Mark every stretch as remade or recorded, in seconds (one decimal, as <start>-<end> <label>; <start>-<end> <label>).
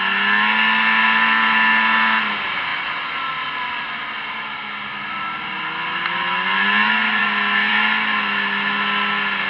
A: 0.0-9.5 recorded